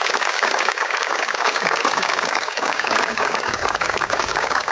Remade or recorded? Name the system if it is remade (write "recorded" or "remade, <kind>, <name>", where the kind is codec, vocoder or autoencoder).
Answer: remade, codec, DAC